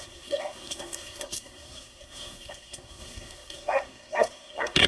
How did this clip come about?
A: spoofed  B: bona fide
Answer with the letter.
A